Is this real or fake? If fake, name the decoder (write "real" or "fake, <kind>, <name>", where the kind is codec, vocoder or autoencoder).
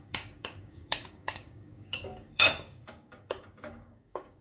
fake, codec, DAC